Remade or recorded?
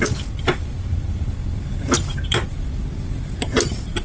recorded